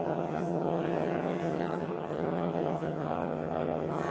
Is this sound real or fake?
fake